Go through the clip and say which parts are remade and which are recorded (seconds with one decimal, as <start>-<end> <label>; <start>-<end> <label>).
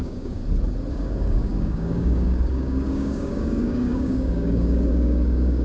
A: 0.0-0.4 remade; 0.4-0.9 recorded; 0.9-5.6 remade